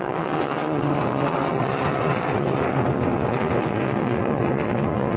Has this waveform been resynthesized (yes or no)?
yes